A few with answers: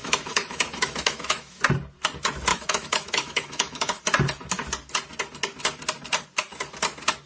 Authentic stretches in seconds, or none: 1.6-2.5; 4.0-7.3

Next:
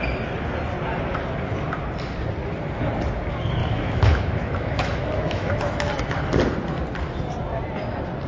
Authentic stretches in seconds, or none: 0.0-3.6; 5.9-8.3

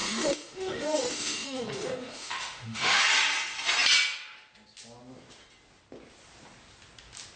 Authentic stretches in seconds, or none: 3.0-7.4